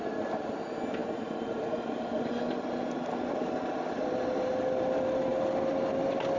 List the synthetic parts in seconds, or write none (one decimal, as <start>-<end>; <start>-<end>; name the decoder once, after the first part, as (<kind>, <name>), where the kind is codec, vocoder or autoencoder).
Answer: 1.0-2.3 (vocoder, BigVGAN v2)